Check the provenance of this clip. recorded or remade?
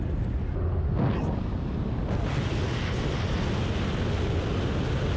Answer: recorded